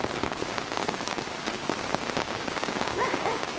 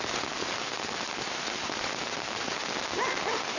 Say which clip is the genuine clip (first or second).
second